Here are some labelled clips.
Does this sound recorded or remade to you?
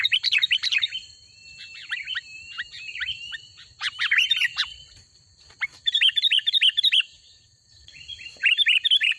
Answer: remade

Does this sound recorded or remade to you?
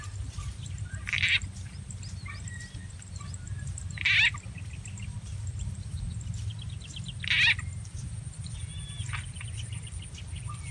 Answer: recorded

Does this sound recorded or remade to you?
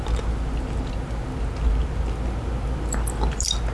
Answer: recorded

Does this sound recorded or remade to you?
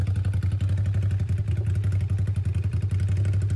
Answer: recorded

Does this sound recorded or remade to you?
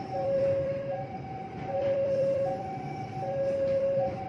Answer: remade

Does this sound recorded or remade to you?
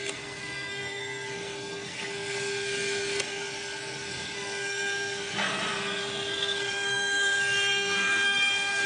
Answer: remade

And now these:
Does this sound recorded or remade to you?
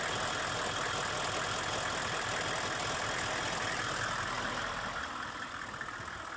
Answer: recorded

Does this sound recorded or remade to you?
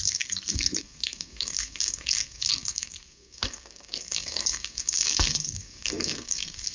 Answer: remade